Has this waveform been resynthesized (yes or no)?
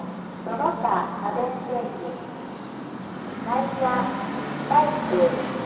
no